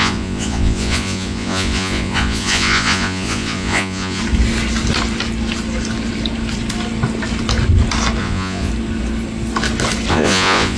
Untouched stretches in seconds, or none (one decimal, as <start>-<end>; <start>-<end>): 4.2-8.2; 8.7-10.1